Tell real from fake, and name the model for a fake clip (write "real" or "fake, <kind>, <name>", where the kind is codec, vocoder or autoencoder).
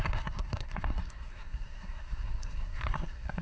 fake, codec, SNAC